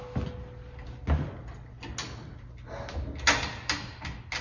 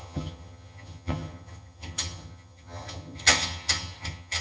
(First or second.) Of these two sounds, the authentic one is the first